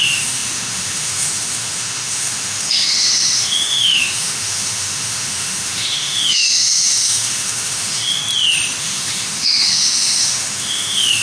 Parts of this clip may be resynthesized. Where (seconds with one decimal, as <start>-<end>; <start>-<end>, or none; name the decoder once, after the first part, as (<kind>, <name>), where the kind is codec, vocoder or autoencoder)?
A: 0.0-8.2 (autoencoder, DAC-VAE); 8.8-11.2